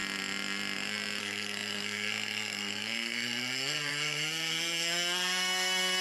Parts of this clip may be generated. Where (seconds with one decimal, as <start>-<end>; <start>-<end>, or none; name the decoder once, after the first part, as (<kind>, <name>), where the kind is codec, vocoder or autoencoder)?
1.2-6.0 (codec, SNAC)